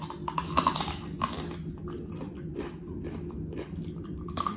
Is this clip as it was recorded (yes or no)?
yes